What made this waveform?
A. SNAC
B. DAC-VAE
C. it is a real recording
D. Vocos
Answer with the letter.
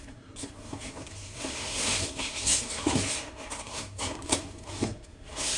A